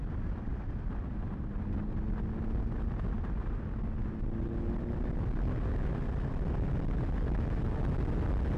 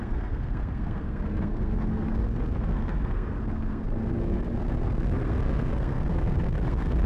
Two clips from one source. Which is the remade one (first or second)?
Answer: second